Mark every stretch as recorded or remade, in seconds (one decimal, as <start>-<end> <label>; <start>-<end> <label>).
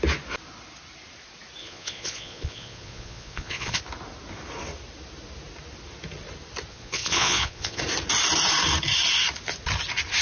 0.0-1.6 recorded; 1.6-3.8 remade; 3.8-6.7 recorded; 6.7-7.8 remade; 7.8-10.2 recorded